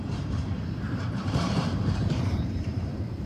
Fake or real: fake